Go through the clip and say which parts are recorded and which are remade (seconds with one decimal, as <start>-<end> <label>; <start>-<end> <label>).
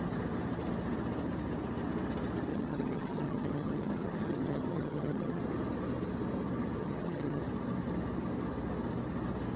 0.0-2.5 recorded; 2.5-5.4 remade; 5.4-6.8 recorded; 6.8-7.4 remade; 7.4-9.6 recorded